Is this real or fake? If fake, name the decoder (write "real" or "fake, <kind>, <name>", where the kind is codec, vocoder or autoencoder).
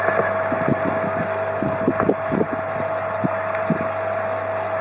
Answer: real